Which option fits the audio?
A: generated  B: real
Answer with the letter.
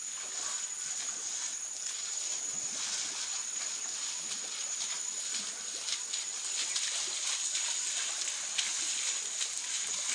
B